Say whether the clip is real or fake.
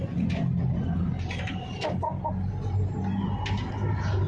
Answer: real